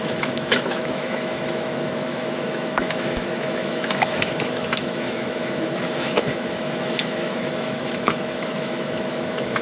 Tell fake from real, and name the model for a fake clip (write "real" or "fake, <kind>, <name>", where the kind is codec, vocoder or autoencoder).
fake, autoencoder, DAC-VAE